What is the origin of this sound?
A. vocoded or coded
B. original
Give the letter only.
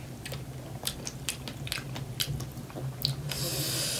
B